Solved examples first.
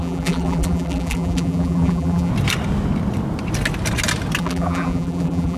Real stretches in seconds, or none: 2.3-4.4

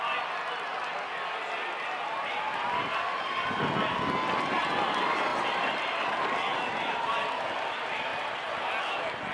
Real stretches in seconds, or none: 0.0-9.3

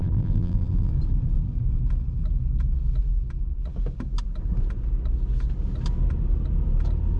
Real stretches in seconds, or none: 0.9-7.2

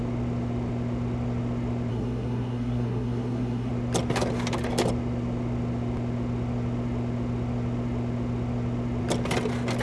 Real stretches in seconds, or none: 0.0-1.9; 3.7-9.8

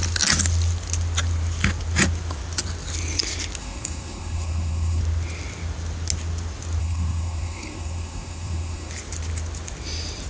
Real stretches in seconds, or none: 0.0-3.6; 5.0-6.8; 8.9-10.3